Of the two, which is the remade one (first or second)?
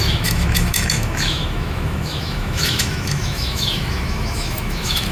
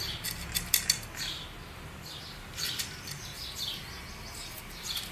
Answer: first